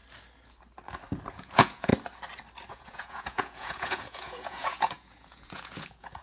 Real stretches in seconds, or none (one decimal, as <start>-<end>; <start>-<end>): 0.0-1.3; 1.9-2.7